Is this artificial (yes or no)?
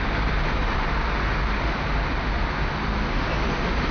no